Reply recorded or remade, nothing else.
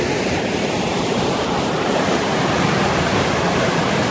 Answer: remade